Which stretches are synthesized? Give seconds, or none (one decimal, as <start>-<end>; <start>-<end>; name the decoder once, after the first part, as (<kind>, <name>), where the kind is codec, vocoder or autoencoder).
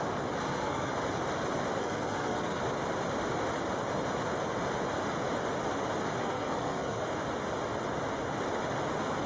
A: 0.4-0.9 (codec, SNAC); 1.8-2.6; 6.2-7.0